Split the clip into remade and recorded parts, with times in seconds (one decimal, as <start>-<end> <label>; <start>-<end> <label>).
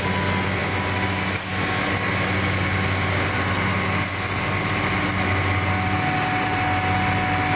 0.0-7.6 recorded